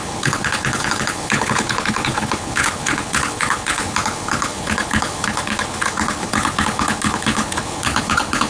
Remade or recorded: remade